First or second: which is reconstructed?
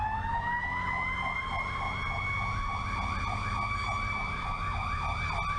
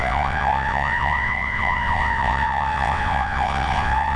second